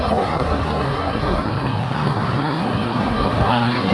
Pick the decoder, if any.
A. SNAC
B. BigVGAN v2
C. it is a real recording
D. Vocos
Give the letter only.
A